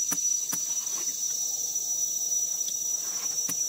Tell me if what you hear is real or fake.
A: real